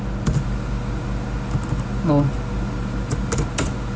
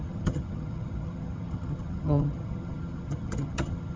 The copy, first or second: second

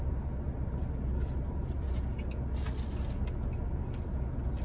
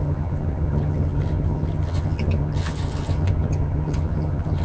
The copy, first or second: second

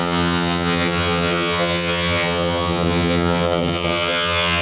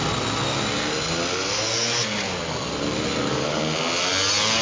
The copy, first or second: first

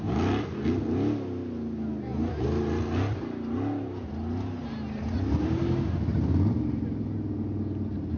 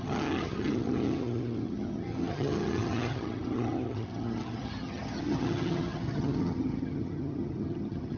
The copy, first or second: second